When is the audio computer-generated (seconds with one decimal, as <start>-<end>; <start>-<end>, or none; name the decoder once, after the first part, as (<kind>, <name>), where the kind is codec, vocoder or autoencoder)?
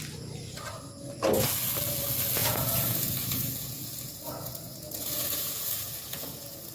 2.4-6.7 (vocoder, Vocos)